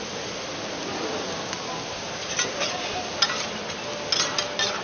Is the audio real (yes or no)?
yes